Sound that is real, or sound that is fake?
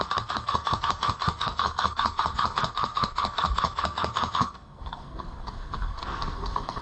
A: fake